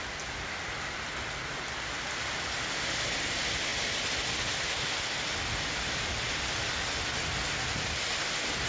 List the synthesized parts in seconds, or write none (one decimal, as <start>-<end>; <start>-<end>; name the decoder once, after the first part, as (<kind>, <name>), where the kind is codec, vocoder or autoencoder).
none